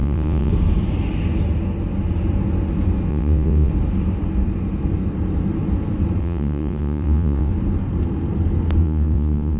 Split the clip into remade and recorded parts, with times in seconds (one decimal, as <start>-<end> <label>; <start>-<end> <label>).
0.0-0.5 remade; 0.5-3.1 recorded; 3.1-3.7 remade; 3.7-6.2 recorded; 6.2-7.5 remade; 7.5-8.8 recorded; 8.8-9.6 remade